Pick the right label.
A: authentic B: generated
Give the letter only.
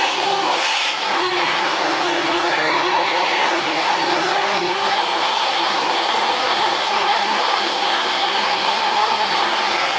B